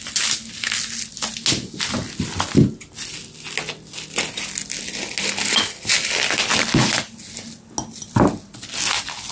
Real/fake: real